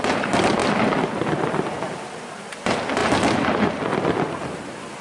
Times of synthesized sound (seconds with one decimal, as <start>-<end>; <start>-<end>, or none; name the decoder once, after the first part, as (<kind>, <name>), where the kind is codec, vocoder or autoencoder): none